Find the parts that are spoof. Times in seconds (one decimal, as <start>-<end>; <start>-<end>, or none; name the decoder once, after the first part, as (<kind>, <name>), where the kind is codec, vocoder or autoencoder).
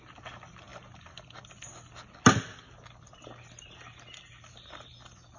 none